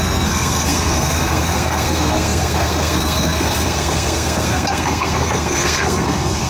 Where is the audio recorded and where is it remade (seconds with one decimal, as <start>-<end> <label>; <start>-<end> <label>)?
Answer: 0.0-6.5 remade